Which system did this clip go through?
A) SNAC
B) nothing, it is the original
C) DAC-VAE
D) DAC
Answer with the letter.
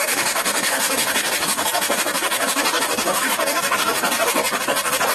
D